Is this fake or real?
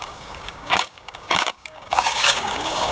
fake